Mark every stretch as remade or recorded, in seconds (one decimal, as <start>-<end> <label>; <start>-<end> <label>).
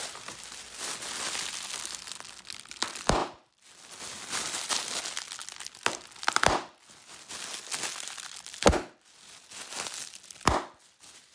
0.0-11.3 recorded